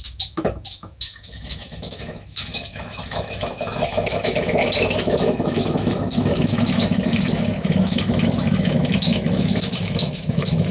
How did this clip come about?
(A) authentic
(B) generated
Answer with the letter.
B